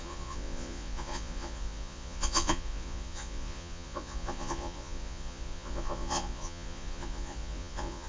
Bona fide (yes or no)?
no